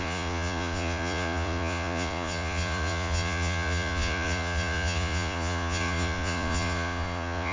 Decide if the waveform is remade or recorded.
remade